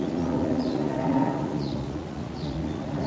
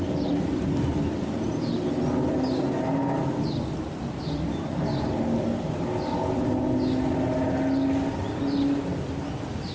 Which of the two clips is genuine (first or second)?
second